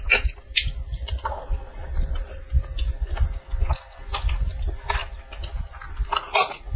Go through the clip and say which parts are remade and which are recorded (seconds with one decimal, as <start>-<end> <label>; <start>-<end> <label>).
0.0-1.0 recorded; 1.0-2.4 remade; 2.4-6.8 recorded